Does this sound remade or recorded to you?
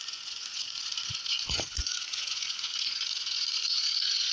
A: remade